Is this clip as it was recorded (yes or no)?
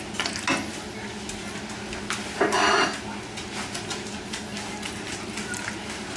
yes